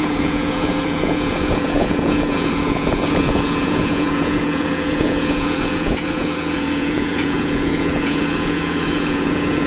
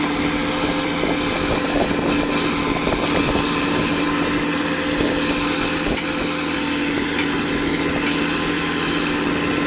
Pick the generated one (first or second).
first